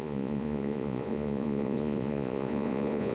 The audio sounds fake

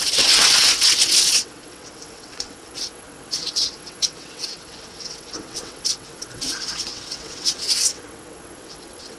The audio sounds fake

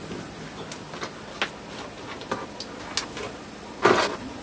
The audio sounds real